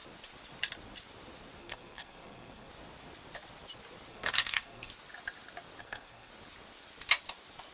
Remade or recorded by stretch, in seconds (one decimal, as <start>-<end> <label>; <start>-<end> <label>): 0.0-1.6 recorded; 1.6-2.7 remade; 2.7-4.1 recorded; 4.1-4.9 remade; 4.9-5.8 recorded; 5.8-6.3 remade; 6.3-7.7 recorded